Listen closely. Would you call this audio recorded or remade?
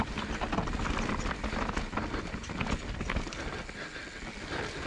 recorded